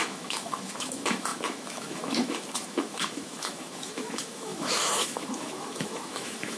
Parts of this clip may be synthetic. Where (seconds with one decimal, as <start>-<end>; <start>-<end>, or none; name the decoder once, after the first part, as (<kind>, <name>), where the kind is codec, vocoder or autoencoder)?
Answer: 0.0-6.6 (autoencoder, DAC-VAE)